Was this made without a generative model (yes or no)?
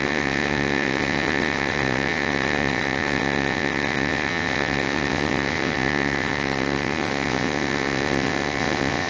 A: no